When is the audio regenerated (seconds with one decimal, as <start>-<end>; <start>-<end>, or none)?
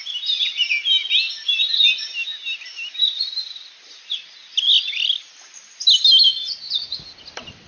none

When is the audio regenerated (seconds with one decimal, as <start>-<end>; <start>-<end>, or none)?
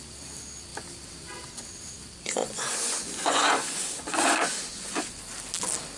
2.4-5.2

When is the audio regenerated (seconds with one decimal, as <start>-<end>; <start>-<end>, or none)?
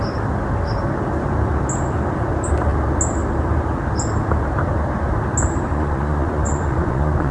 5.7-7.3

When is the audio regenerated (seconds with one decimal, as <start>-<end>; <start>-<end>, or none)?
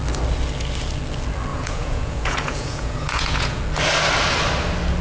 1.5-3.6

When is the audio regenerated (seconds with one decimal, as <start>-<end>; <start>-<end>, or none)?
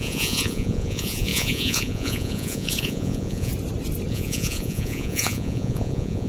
0.0-3.5; 4.1-6.3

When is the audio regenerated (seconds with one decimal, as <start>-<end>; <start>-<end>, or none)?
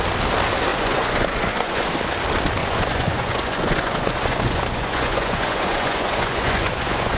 0.7-1.9; 2.6-7.2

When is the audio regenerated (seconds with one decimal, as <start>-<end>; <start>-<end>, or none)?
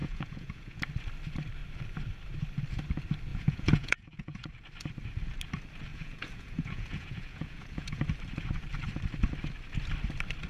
0.0-0.8; 3.3-4.5; 5.9-8.0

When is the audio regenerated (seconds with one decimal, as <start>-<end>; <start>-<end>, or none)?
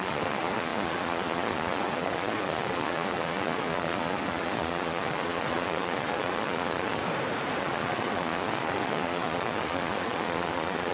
0.0-7.0; 7.6-10.9